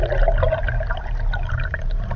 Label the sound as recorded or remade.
recorded